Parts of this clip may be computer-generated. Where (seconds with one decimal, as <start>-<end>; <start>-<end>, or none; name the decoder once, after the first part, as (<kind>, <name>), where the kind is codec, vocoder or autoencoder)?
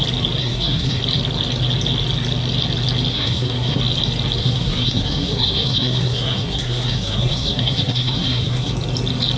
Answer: 0.4-1.0 (codec, SNAC); 3.1-3.8; 4.4-8.7